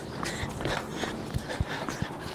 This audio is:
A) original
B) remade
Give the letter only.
A